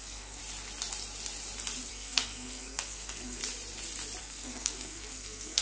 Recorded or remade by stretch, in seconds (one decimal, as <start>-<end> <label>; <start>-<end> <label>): 0.0-0.4 remade; 0.4-1.9 recorded; 1.9-3.4 remade; 3.4-4.2 recorded; 4.2-5.6 remade